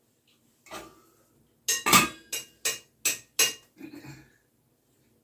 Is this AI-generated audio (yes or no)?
no